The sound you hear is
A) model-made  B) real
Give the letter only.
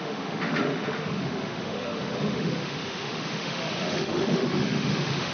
A